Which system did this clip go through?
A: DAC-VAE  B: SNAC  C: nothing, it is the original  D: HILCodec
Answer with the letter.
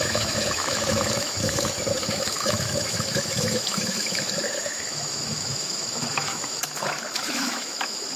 A